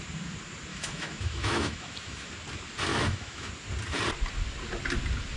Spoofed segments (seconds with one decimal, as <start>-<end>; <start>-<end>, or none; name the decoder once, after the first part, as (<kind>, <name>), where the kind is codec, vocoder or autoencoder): 0.7-2.3 (autoencoder, DAC-VAE); 2.9-3.5